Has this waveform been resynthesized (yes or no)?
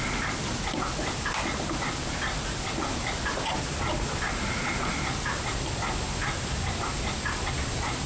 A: no